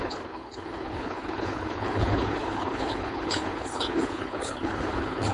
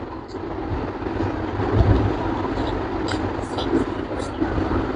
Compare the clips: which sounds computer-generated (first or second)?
first